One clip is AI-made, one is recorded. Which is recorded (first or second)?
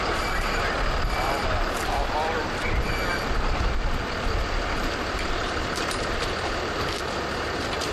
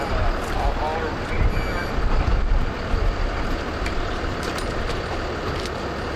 second